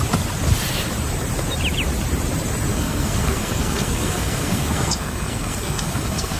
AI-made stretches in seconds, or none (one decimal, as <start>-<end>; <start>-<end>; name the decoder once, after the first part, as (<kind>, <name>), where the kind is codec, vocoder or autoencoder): 2.7-6.4 (codec, SNAC)